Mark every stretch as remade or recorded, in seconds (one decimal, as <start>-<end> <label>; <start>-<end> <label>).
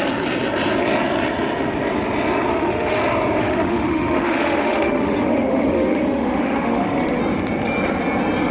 0.0-2.5 recorded; 2.5-3.0 remade; 3.0-3.4 recorded; 3.4-7.2 remade; 7.2-8.5 recorded